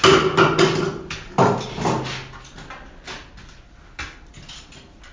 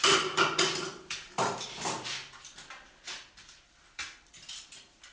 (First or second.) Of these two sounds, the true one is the first